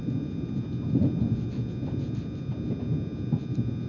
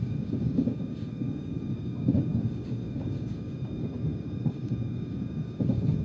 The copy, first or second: second